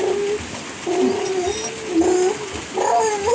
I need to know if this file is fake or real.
real